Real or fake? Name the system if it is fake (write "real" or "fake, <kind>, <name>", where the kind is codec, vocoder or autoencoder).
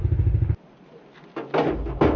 real